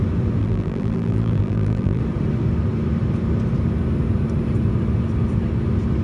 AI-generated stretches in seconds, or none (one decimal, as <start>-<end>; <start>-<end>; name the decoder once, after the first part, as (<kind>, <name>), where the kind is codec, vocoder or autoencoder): 0.4-2.0 (vocoder, BigVGAN v2)